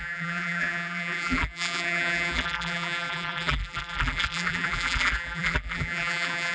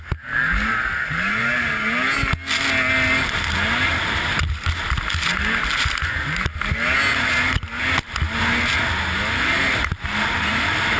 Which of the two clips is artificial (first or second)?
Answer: first